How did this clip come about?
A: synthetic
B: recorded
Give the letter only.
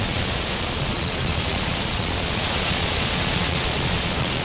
A